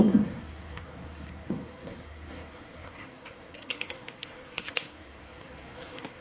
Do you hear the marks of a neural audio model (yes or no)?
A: yes